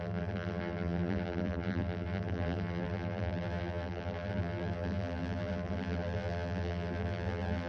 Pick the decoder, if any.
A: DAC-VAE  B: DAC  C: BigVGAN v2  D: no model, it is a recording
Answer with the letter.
C